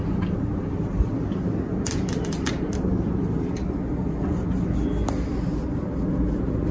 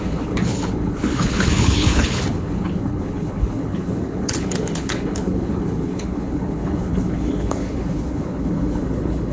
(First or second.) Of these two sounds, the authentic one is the first